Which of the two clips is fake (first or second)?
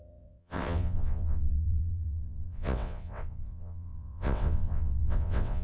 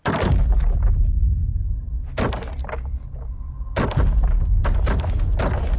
first